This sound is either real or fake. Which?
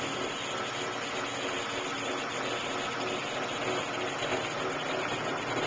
real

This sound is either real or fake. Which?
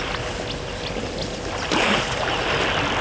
real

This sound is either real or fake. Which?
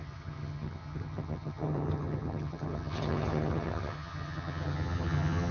fake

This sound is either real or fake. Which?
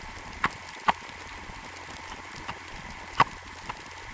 real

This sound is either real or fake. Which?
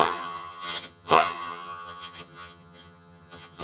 fake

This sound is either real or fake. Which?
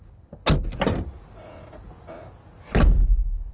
real